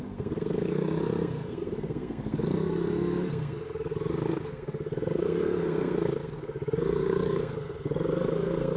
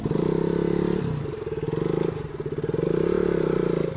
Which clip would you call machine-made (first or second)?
first